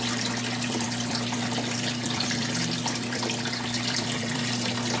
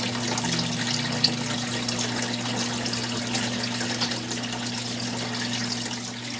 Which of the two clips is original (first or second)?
second